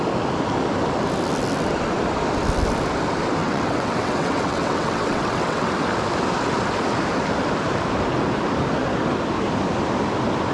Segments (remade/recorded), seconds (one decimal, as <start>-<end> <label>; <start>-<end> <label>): 0.0-3.4 recorded; 3.4-5.7 remade; 5.7-10.5 recorded